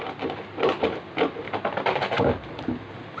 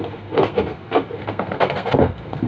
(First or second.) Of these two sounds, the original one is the first